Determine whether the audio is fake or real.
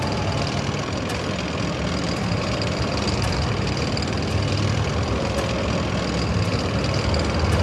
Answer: fake